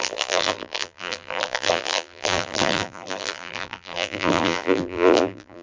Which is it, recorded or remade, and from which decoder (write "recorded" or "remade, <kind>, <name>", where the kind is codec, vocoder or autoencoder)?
remade, vocoder, BigVGAN v2